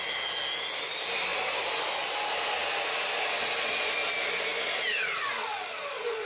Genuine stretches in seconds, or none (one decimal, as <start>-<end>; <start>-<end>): 0.0-6.3

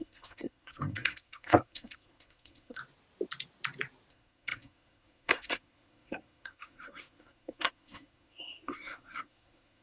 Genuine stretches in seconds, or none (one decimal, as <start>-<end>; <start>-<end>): 2.8-4.1

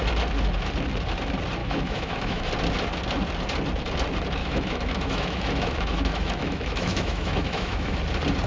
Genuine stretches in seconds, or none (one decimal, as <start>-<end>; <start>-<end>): 0.0-1.6; 2.5-4.4; 8.0-8.5

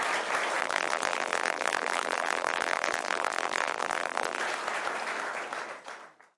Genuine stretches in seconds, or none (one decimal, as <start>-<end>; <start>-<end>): 0.0-0.6; 4.4-6.4

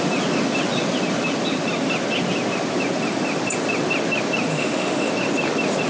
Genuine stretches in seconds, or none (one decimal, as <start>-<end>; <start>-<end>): 0.0-4.5; 5.1-5.9